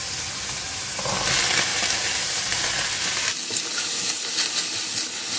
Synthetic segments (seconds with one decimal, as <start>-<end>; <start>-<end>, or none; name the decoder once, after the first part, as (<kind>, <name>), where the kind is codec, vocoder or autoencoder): 1.7-2.7 (vocoder, BigVGAN v2); 3.7-4.3